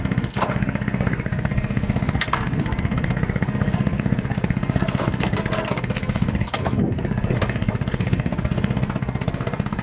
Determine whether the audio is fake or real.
fake